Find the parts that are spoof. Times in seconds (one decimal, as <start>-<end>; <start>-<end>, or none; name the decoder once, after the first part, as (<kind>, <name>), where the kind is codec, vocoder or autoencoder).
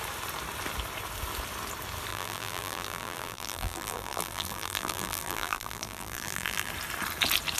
2.1-6.7 (vocoder, BigVGAN v2)